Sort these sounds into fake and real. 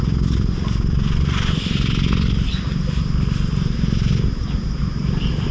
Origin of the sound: real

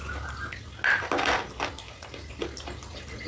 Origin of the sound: real